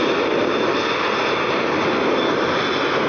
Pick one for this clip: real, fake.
real